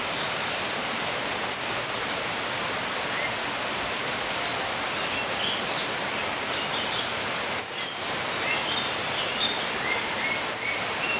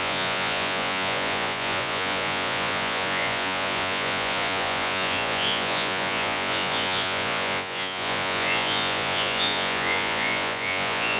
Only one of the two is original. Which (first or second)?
first